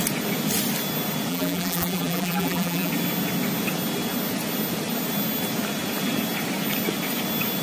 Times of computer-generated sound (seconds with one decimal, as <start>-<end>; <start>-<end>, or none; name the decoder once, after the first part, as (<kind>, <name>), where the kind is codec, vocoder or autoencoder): 1.3-2.9 (vocoder, BigVGAN v2)